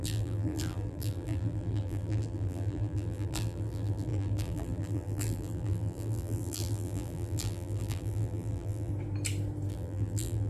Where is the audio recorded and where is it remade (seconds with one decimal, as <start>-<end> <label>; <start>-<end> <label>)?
0.0-8.9 remade; 8.9-9.7 recorded; 9.7-10.5 remade